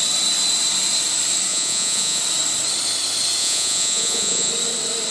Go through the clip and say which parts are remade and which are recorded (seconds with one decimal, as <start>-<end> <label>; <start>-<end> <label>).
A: 0.0-1.5 recorded; 1.5-2.2 remade; 2.2-3.4 recorded; 3.4-4.5 remade; 4.5-5.1 recorded